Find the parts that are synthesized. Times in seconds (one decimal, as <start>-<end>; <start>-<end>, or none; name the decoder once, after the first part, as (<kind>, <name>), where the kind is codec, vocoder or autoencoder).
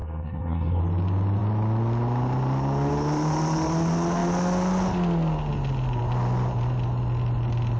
0.0-0.8 (codec, SNAC)